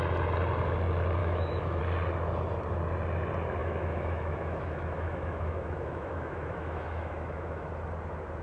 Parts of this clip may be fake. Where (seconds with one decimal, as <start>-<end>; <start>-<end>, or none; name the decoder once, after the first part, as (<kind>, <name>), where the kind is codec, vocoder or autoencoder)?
1.2-1.8 (autoencoder, DAC-VAE); 3.6-7.7